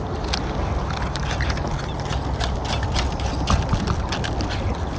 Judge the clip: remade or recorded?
recorded